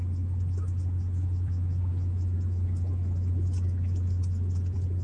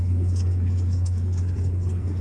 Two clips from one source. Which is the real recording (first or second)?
first